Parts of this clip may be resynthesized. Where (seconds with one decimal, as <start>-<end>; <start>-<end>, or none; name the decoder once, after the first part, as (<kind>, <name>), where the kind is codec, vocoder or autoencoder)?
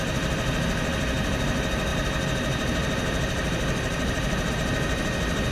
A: none